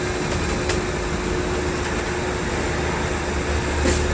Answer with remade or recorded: recorded